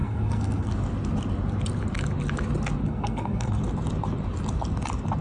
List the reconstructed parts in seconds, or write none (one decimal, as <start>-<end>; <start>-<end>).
0.0-0.7; 2.8-3.6